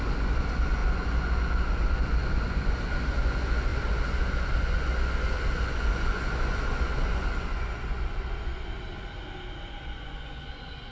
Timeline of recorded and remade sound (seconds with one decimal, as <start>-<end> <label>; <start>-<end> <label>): 0.0-8.7 remade; 8.7-9.7 recorded; 9.7-10.9 remade